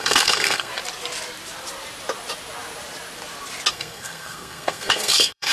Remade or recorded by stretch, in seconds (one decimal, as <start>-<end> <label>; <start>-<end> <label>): 0.0-0.7 remade; 0.7-3.7 recorded; 3.7-5.5 remade